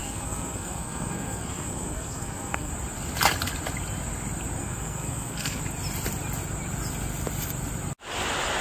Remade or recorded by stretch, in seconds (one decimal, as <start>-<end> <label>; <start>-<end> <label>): 0.0-2.7 remade; 2.7-4.6 recorded; 4.6-5.6 remade; 5.6-8.6 recorded